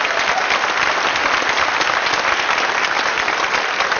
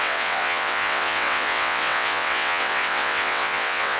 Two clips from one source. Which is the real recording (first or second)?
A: first